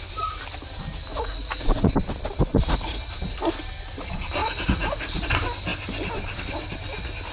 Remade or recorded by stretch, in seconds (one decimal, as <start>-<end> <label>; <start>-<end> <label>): 0.0-1.1 recorded; 1.1-1.9 remade; 1.9-2.5 recorded; 2.5-3.1 remade; 3.1-4.4 recorded; 4.4-5.3 remade; 5.3-7.3 recorded